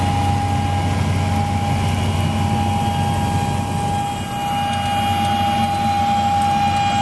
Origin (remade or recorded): recorded